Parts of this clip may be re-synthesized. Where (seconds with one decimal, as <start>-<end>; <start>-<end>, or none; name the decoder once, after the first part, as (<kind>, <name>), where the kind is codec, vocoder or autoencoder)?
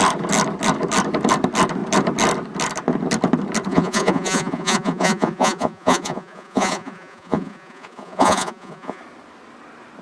3.7-9.0 (vocoder, Vocos)